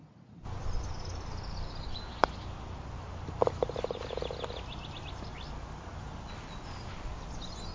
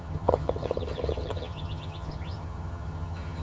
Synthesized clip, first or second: second